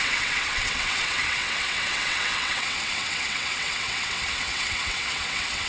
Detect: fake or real fake